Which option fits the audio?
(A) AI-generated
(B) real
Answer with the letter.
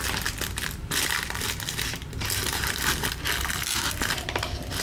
B